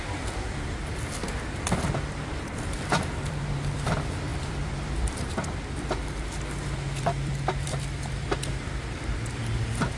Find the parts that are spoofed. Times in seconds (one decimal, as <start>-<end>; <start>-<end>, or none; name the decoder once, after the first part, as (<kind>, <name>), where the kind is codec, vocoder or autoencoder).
0.0-1.2 (vocoder, BigVGAN v2); 2.3-10.0